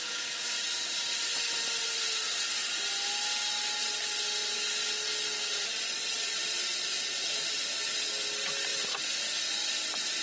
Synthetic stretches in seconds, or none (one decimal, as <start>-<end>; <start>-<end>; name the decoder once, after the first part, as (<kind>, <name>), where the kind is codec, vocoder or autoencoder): none